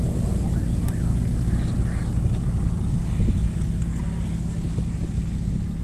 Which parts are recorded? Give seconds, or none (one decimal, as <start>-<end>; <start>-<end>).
0.0-5.8